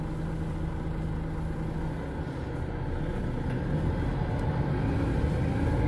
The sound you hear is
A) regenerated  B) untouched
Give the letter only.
B